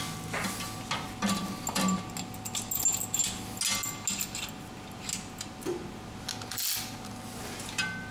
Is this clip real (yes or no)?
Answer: yes